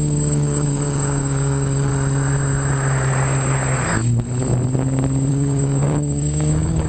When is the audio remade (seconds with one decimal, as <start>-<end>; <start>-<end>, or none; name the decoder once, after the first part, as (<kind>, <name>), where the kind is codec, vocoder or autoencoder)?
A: 0.0-1.9 (codec, DAC); 5.3-6.9